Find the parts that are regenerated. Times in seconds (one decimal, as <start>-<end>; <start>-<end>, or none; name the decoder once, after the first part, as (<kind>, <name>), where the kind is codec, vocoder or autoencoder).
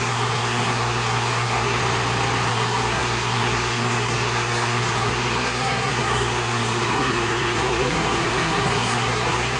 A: 0.0-1.8 (codec, SNAC); 2.5-9.6